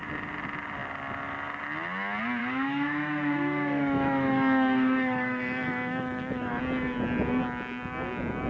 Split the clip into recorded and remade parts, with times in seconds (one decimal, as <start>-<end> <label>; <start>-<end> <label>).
0.0-2.4 recorded; 2.4-6.6 remade; 6.6-8.5 recorded